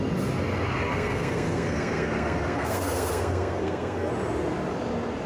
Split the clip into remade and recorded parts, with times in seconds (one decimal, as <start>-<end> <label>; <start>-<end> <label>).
0.0-0.9 recorded; 0.9-4.1 remade; 4.1-5.3 recorded